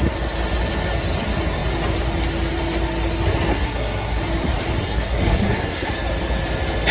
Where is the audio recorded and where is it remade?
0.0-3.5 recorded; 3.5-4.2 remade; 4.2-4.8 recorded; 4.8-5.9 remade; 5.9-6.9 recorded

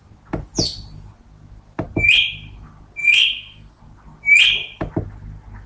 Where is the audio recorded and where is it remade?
0.0-3.0 recorded; 3.0-3.8 remade; 3.8-5.7 recorded

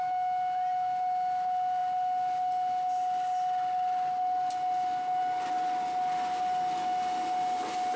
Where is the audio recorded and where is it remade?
0.0-8.0 recorded

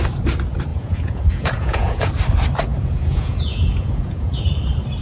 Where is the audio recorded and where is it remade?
0.0-0.7 recorded; 0.7-2.1 remade; 2.1-2.7 recorded; 2.7-4.4 remade; 4.4-5.0 recorded